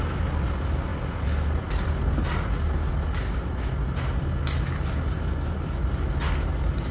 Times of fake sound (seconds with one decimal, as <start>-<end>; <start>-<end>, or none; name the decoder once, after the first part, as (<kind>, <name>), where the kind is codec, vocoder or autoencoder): none